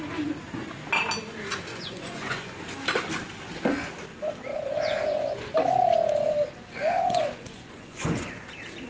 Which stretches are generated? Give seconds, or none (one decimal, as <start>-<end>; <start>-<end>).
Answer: 1.7-2.6; 4.5-5.5; 6.8-8.4